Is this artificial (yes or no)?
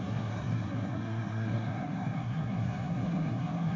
yes